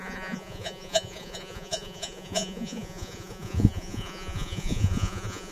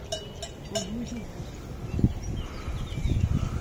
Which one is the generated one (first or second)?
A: first